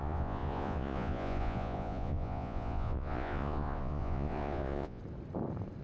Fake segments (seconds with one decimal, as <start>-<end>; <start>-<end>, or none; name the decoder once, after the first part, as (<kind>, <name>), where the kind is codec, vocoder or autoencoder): 0.0-5.0 (vocoder, Vocos)